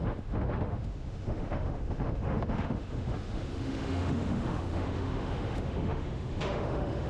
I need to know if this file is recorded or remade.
remade